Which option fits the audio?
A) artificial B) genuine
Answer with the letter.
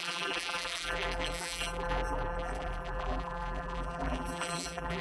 A